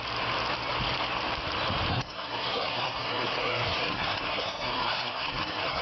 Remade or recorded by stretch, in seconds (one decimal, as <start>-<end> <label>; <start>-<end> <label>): 0.0-1.9 recorded; 1.9-5.8 remade